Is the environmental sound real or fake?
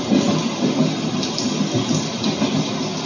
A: real